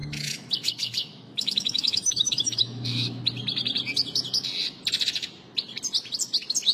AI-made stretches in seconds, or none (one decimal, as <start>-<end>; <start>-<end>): 0.0-3.2